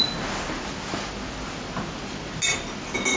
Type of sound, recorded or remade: recorded